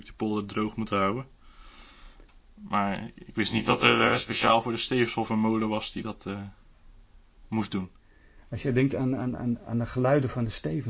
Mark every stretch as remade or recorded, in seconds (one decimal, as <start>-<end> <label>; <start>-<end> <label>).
0.0-3.5 recorded; 3.5-4.5 remade; 4.5-10.9 recorded